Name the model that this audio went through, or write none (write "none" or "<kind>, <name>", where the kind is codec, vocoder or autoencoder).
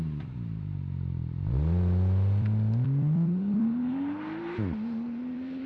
vocoder, BigVGAN v2